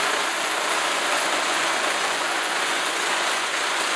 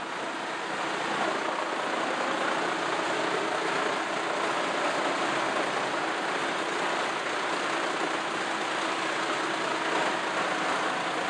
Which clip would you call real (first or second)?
second